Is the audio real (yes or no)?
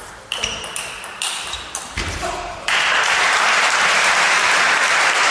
no